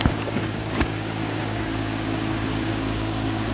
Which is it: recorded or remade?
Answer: remade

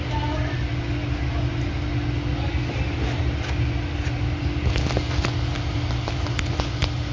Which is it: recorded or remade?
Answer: recorded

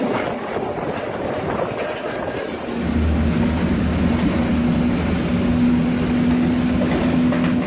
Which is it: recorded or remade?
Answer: recorded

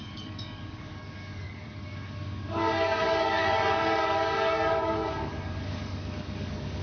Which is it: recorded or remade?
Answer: remade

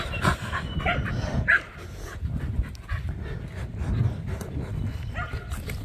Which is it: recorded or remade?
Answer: recorded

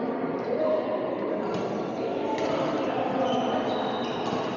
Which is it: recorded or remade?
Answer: recorded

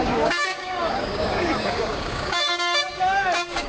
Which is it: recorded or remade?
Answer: remade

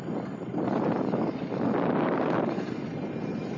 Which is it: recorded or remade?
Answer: recorded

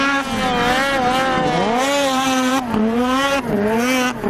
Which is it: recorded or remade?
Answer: recorded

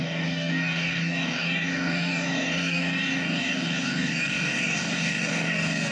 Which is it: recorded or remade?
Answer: remade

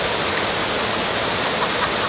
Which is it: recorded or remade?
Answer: recorded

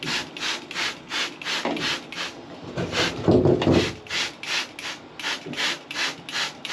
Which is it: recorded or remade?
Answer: recorded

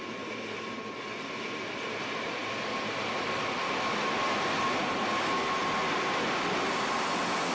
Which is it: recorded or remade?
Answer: recorded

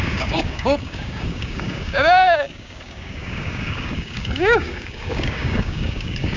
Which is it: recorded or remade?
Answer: remade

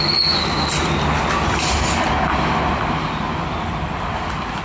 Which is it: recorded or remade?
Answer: recorded